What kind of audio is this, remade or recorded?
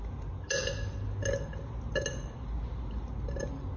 recorded